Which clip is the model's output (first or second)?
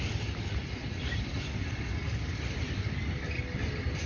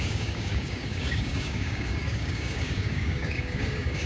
second